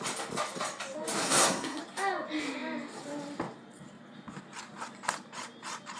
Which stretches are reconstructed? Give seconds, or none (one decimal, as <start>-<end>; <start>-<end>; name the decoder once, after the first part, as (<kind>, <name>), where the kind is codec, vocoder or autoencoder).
1.2-1.8 (codec, SNAC)